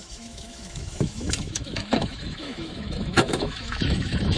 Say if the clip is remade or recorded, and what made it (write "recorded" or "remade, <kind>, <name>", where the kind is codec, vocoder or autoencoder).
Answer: remade, autoencoder, DAC-VAE